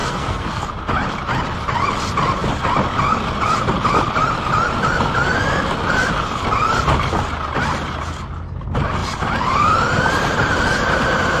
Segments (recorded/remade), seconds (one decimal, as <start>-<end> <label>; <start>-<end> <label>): 0.0-0.6 remade; 0.6-11.4 recorded